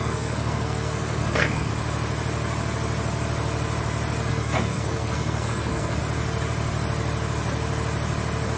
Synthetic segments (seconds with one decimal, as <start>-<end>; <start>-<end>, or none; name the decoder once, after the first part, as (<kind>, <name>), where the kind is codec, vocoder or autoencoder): 0.0-1.7 (codec, SNAC); 4.3-6.0